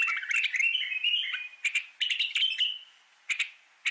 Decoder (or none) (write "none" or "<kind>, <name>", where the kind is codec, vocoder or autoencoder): none